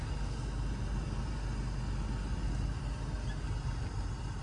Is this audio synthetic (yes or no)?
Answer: no